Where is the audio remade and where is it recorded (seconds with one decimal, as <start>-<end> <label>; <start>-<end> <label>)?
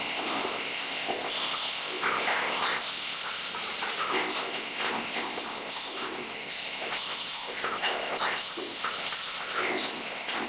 0.0-3.5 remade; 3.5-4.0 recorded; 4.0-10.5 remade